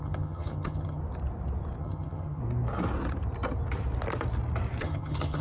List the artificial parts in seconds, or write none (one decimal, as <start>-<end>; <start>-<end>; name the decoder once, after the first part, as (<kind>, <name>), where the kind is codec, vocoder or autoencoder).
0.0-1.0 (vocoder, HiFi-GAN); 1.8-2.4; 4.8-5.4